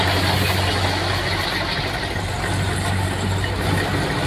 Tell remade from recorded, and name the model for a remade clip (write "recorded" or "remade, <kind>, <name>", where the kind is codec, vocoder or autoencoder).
recorded